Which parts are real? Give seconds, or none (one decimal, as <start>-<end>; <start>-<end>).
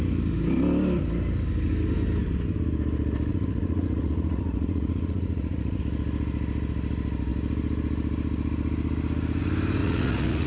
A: 0.0-3.3; 5.8-9.8